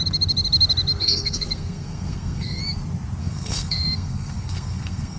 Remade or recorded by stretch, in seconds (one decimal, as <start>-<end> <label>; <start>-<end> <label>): 0.0-1.0 recorded; 1.0-2.6 remade; 2.6-3.2 recorded; 3.2-5.2 remade